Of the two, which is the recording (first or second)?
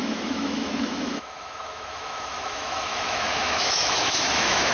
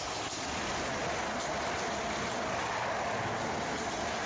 second